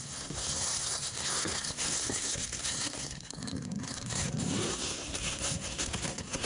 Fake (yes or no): yes